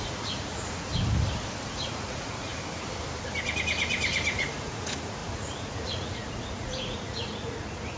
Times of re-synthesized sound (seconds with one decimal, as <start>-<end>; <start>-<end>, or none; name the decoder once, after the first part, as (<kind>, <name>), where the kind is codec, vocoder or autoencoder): 0.0-0.9 (vocoder, Vocos); 1.7-2.5; 4.3-8.0